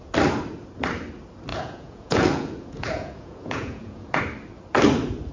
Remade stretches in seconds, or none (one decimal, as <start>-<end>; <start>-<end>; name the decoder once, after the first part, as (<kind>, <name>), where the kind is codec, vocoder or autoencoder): 1.5-4.2 (vocoder, Vocos)